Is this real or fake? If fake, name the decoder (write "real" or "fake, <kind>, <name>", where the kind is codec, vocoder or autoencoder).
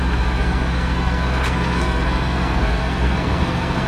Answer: fake, codec, SNAC